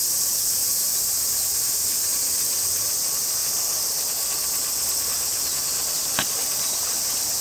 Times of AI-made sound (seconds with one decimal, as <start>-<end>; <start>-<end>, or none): 0.6-1.4